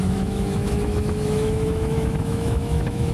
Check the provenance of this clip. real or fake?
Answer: fake